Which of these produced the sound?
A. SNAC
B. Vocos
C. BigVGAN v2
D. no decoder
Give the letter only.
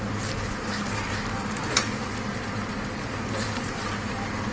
D